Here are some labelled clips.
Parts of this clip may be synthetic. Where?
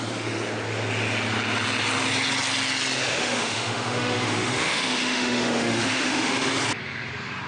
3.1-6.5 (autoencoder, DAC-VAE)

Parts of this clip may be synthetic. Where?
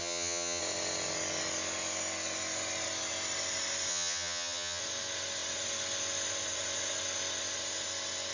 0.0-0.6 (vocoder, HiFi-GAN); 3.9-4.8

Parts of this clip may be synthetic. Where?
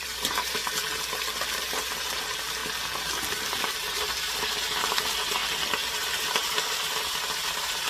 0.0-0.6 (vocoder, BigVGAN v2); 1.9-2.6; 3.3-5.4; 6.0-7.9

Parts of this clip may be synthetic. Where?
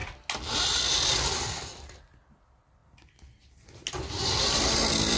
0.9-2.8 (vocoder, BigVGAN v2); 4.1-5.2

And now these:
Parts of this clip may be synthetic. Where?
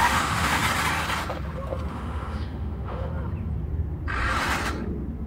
0.0-0.6 (autoencoder, DAC-VAE); 1.9-3.1